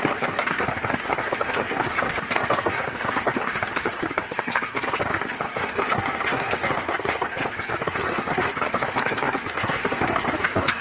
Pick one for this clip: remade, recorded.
remade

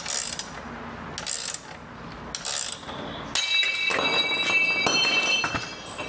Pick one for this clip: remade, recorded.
recorded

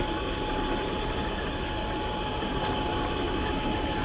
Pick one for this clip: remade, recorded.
recorded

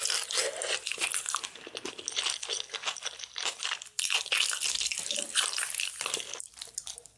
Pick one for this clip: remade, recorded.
recorded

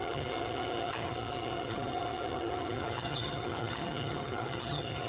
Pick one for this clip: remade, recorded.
remade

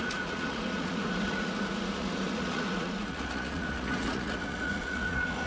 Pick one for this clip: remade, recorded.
remade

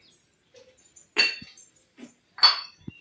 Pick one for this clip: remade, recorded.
recorded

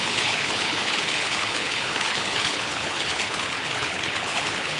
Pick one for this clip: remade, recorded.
remade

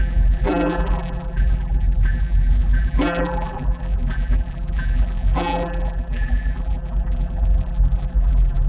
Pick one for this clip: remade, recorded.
remade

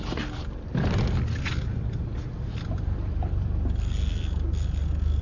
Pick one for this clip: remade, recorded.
recorded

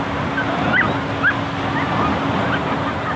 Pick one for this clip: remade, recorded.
recorded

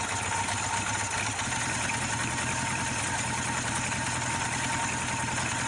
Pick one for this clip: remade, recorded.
recorded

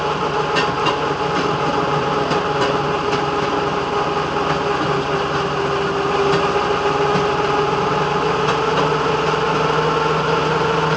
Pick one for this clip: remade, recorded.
recorded